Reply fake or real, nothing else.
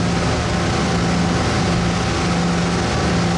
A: real